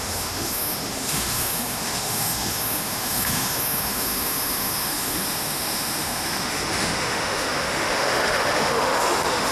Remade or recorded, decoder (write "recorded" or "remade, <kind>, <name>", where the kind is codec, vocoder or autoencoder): remade, autoencoder, DAC-VAE